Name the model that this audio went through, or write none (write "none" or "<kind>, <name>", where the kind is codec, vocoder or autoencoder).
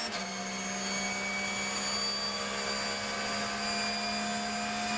none